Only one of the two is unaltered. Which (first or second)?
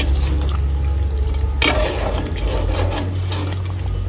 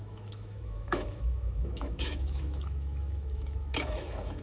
first